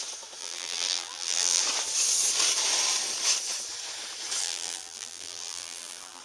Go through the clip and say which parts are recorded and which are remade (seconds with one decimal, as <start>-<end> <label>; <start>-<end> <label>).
0.0-0.4 recorded; 0.4-1.6 remade; 1.6-4.4 recorded; 4.4-6.2 remade